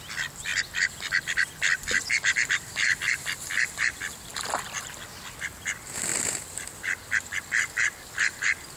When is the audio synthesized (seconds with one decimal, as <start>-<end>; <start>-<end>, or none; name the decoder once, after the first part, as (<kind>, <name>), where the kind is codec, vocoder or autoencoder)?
none